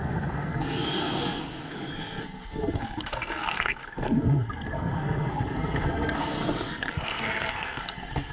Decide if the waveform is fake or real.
fake